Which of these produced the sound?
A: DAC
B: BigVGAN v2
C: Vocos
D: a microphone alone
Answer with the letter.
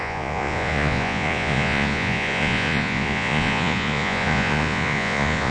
C